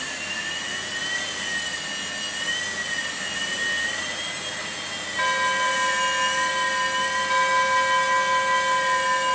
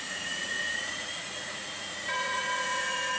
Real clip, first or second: first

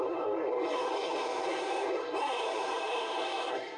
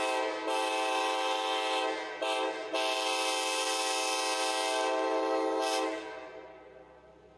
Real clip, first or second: second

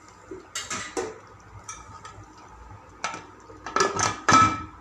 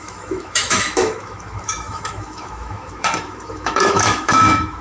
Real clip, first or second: first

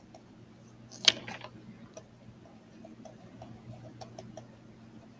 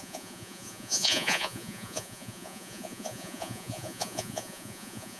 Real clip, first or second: first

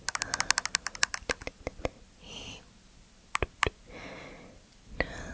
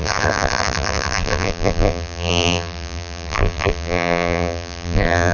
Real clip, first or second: first